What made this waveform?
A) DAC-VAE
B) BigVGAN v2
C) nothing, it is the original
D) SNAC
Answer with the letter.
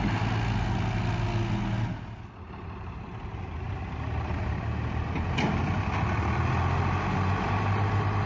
C